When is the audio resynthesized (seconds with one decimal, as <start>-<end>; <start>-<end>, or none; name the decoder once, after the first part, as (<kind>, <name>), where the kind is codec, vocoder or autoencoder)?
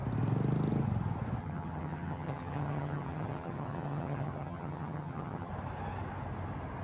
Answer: 1.4-5.5 (vocoder, HiFi-GAN)